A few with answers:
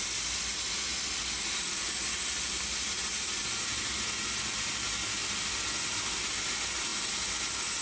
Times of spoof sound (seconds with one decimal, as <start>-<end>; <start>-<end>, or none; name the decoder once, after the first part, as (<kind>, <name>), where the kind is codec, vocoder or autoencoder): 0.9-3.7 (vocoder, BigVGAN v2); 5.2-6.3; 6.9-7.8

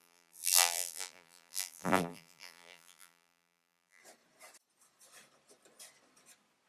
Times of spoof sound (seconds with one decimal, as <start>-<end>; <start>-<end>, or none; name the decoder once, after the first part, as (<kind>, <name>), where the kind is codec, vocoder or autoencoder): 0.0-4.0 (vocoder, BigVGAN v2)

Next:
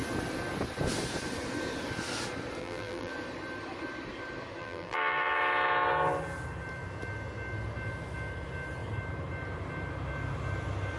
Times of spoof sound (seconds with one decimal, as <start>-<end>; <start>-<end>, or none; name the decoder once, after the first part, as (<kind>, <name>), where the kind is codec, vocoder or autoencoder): 2.6-3.1 (vocoder, BigVGAN v2); 4.6-5.4

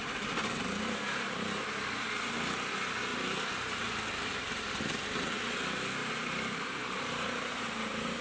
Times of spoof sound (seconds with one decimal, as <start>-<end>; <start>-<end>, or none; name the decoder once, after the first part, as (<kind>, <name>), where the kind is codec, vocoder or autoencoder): 3.1-5.3 (vocoder, BigVGAN v2); 6.0-8.2

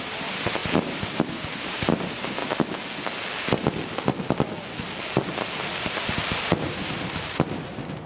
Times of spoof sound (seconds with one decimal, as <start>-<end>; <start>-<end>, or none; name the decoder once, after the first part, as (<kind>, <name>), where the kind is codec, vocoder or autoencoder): 0.0-2.4 (vocoder, BigVGAN v2); 6.4-8.1